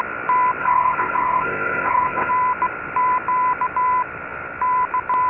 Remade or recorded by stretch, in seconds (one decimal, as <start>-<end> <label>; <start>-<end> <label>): 0.0-0.6 recorded; 0.6-2.3 remade; 2.3-5.3 recorded